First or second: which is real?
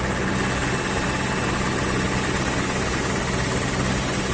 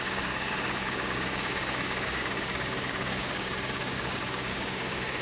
first